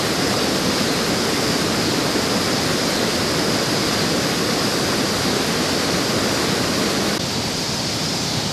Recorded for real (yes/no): yes